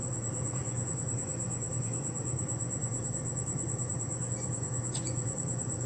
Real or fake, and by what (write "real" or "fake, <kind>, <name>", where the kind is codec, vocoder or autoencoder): fake, vocoder, Vocos